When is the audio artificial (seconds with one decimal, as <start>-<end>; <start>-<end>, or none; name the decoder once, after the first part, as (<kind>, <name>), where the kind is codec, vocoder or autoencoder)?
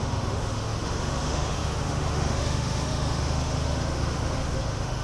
0.0-5.0 (autoencoder, DAC-VAE)